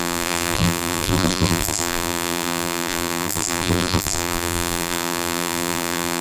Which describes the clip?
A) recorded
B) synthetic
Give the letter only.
B